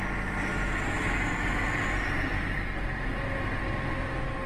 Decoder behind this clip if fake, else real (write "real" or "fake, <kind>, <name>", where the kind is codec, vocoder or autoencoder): real